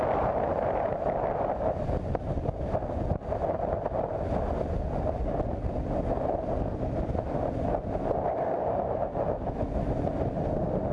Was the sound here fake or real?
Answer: real